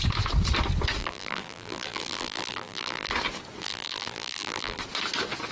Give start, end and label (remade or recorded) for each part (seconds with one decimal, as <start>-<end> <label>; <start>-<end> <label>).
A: 0.0-1.0 recorded; 1.0-3.1 remade; 3.1-3.6 recorded; 3.6-4.8 remade; 4.8-5.5 recorded